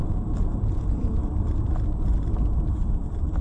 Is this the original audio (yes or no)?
no